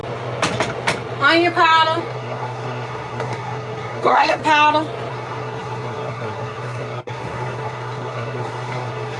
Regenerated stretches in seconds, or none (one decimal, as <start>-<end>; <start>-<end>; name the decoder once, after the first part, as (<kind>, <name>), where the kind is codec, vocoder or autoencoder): 2.0-4.4 (codec, SNAC); 5.1-9.2